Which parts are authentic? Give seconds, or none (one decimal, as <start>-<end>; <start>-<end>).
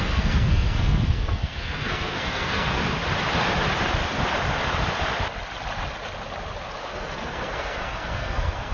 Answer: 2.8-6.8